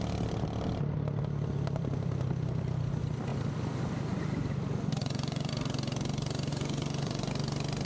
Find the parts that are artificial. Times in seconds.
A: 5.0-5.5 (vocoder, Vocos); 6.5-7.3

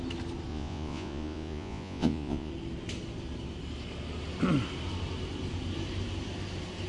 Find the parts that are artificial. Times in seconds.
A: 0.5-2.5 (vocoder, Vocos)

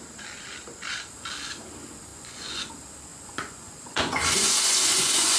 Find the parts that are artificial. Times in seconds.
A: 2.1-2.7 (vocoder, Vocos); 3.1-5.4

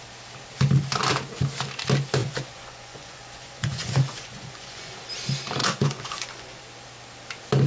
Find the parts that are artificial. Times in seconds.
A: 2.2-4.9 (vocoder, Vocos); 5.6-6.6

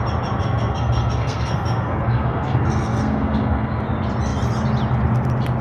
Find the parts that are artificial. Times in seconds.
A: 0.4-3.8 (codec, SNAC)

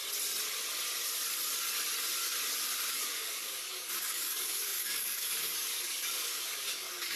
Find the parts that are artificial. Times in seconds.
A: 2.9-7.2 (codec, DAC)

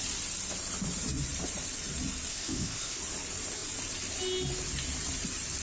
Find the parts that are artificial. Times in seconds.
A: 2.3-3.0 (codec, ZipCodec)